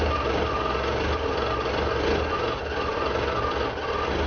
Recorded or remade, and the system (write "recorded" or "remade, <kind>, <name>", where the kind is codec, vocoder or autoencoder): recorded